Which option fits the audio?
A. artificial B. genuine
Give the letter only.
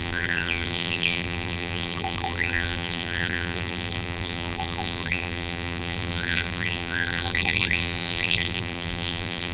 A